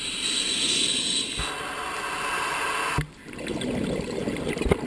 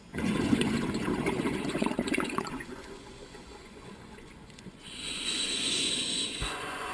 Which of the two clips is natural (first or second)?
first